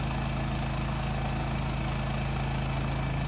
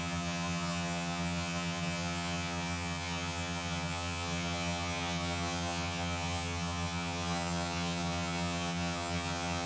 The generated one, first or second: second